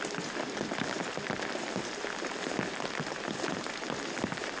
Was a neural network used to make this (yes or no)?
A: no